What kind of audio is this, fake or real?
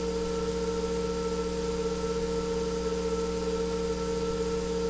real